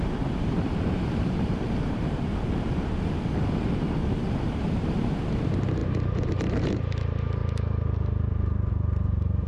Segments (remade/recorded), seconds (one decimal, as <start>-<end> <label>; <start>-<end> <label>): 0.0-2.3 remade; 2.3-3.4 recorded; 3.4-9.5 remade